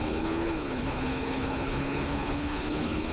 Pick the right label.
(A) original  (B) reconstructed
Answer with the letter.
B